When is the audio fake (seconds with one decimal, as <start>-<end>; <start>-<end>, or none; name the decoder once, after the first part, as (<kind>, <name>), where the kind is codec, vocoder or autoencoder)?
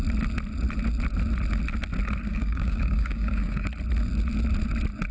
2.3-3.7 (codec, DAC)